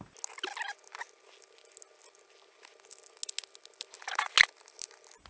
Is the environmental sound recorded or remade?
recorded